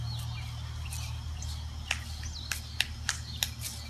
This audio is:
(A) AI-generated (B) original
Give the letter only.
B